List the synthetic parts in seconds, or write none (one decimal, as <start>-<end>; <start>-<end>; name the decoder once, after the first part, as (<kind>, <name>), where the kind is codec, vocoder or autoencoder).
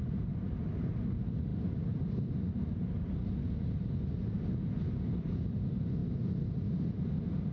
none